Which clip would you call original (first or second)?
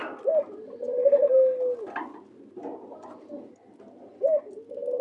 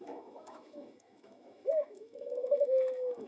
first